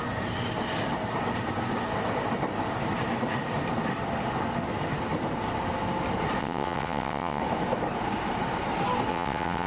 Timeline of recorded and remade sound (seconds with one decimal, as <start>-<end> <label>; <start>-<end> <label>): 0.0-6.4 recorded; 6.4-7.4 remade; 7.4-9.1 recorded; 9.1-9.7 remade